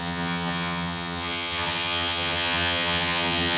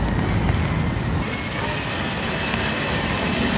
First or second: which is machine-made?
first